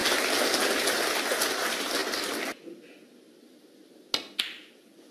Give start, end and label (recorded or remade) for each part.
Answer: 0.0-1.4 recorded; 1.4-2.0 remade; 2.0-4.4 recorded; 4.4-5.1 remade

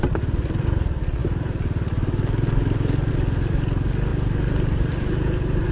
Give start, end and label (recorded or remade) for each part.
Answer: 0.0-4.1 recorded; 4.1-5.7 remade

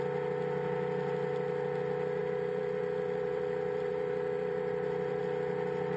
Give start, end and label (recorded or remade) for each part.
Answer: 0.0-2.2 recorded; 2.2-5.2 remade; 5.2-6.0 recorded

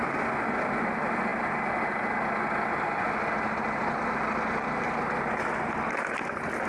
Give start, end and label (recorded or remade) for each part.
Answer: 0.0-6.7 recorded

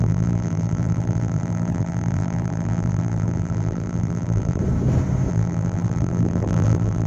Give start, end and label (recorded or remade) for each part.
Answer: 0.0-4.6 remade; 4.6-5.3 recorded; 5.3-7.1 remade

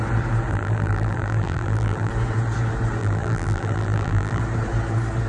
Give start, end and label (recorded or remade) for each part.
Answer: 0.0-0.5 recorded; 0.5-2.1 remade; 2.1-3.0 recorded; 3.0-4.4 remade; 4.4-5.3 recorded

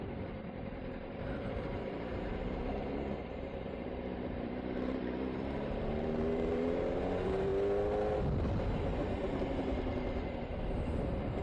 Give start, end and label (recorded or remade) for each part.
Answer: 0.0-7.5 remade; 7.5-11.0 recorded; 11.0-11.4 remade